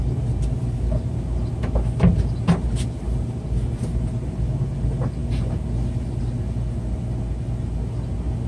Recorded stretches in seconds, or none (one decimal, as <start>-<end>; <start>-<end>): 0.0-8.5